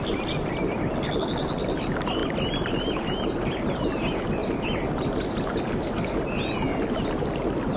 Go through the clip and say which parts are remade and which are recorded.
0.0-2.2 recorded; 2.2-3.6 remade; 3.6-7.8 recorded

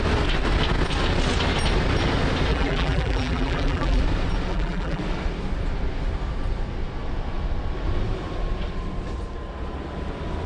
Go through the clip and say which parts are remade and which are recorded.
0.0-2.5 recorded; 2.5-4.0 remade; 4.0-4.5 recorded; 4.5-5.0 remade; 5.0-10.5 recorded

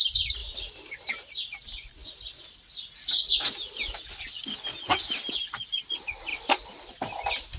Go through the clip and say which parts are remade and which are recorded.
0.0-0.4 recorded; 0.4-1.1 remade; 1.1-2.0 recorded; 2.0-4.0 remade; 4.0-6.3 recorded; 6.3-6.9 remade; 6.9-7.6 recorded

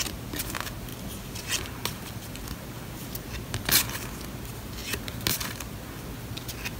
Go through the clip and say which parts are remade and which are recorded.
0.0-6.8 recorded